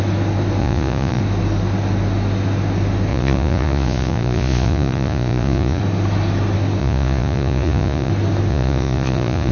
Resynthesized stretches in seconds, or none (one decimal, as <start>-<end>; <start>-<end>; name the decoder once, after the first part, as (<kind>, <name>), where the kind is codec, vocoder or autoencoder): 0.6-1.2 (vocoder, Vocos); 3.1-5.8; 6.8-8.1; 8.5-9.5